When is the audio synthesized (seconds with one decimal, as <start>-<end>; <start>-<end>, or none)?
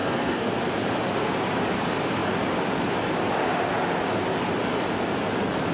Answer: 0.0-0.5